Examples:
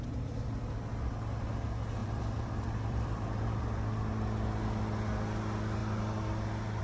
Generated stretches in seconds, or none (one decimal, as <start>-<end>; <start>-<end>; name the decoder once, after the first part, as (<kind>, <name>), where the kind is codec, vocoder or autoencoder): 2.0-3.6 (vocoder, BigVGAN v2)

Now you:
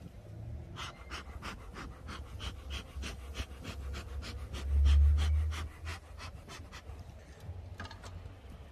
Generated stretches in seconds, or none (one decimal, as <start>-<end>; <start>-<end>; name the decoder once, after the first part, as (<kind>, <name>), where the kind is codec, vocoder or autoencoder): 5.9-6.9 (vocoder, BigVGAN v2)

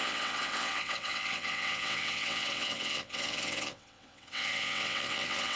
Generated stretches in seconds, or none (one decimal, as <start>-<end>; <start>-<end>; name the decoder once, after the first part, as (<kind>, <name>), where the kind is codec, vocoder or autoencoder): 0.0-5.6 (vocoder, WaveNeXt)